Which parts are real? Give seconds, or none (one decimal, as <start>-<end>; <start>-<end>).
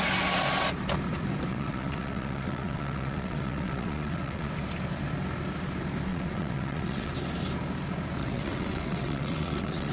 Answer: 0.0-1.5; 4.5-6.1; 7.1-8.2